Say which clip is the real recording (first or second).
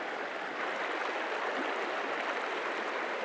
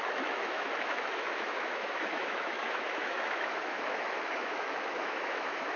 first